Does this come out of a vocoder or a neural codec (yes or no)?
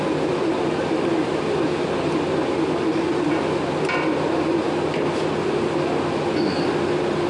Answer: no